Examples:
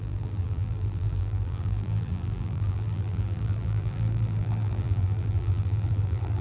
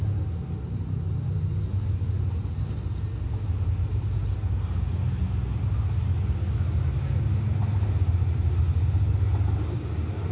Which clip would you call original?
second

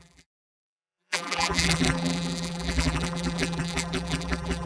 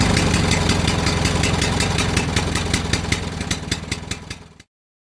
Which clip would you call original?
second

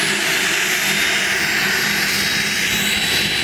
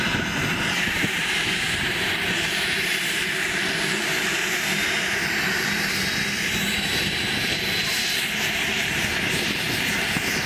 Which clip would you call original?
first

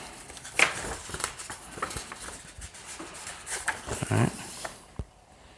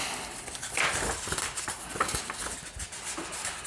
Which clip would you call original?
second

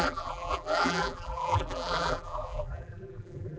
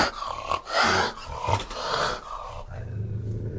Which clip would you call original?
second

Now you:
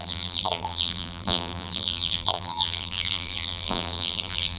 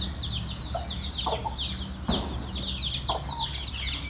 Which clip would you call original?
second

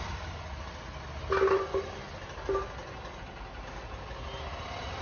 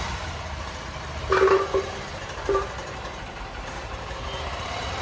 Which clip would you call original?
first